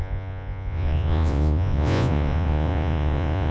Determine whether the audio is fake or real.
fake